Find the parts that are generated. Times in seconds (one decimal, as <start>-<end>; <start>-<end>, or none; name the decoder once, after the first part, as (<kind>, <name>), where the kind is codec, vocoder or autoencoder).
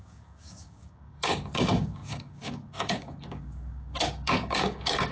0.0-5.1 (codec, DAC)